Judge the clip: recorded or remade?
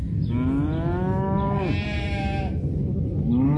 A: recorded